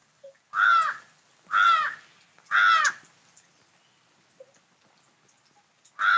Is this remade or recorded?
recorded